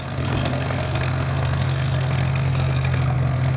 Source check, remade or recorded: remade